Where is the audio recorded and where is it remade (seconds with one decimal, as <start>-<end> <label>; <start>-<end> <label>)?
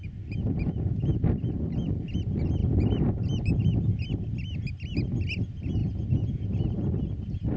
0.0-7.6 recorded